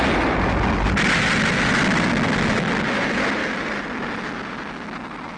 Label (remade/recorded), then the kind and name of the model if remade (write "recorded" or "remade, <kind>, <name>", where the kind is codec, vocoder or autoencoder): recorded